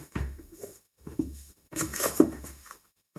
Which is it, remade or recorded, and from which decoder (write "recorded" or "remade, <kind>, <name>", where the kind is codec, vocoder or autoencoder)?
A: remade, autoencoder, DAC-VAE